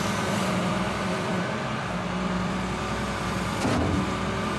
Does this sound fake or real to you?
fake